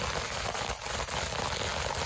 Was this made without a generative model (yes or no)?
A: yes